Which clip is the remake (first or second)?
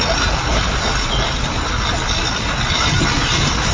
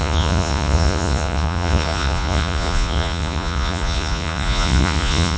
second